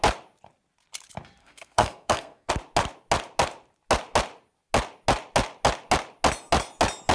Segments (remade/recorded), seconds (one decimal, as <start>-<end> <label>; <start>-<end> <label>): 0.0-1.4 recorded; 1.4-2.5 remade; 2.5-7.1 recorded